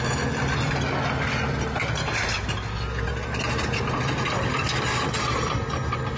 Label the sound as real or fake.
real